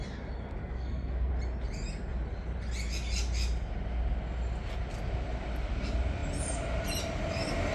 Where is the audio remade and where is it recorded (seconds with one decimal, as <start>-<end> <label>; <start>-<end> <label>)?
0.0-0.6 recorded; 0.6-1.3 remade; 1.3-7.7 recorded